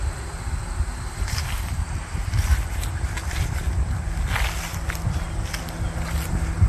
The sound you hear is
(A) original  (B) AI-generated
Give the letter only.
A